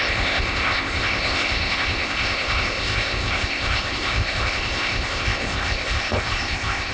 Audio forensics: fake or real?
fake